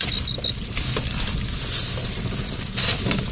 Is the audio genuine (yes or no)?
yes